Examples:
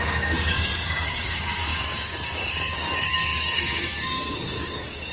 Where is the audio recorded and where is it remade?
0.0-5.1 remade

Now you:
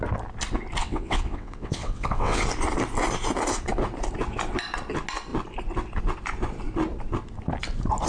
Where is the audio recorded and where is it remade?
0.0-0.8 recorded; 0.8-2.4 remade; 2.4-8.1 recorded

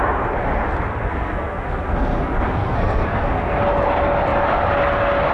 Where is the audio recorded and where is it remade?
0.0-0.9 recorded; 0.9-3.6 remade; 3.6-5.3 recorded

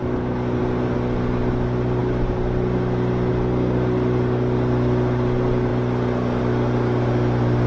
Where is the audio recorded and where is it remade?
0.0-7.7 recorded

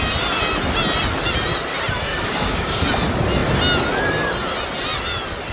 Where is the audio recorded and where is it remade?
0.0-2.1 recorded; 2.1-2.8 remade; 2.8-5.5 recorded